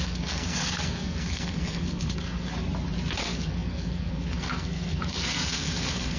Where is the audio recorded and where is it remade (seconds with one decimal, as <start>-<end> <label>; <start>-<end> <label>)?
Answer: 0.0-2.5 remade; 2.5-3.2 recorded; 3.2-6.2 remade